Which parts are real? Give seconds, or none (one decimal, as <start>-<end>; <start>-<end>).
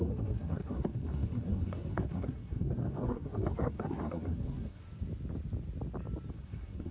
4.8-6.3